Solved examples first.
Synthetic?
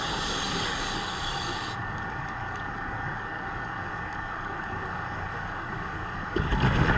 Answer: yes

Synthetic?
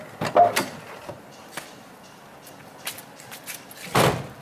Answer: no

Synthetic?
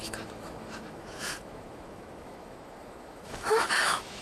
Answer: yes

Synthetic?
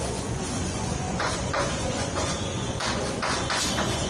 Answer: yes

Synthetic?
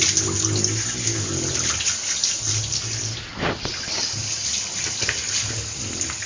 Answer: no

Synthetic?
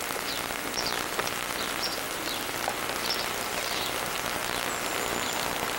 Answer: no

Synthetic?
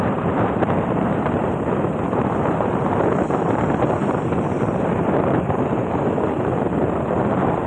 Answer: yes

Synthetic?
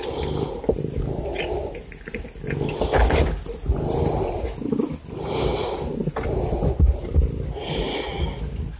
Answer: no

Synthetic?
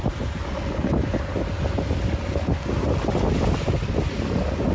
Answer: no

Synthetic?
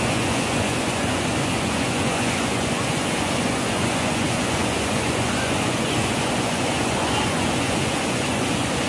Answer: yes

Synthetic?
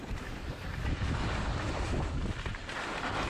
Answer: yes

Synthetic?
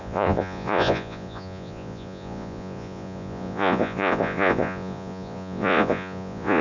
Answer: yes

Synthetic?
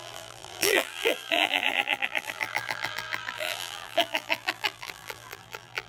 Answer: yes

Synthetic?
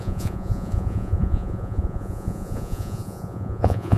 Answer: yes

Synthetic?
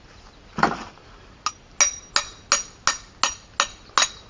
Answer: no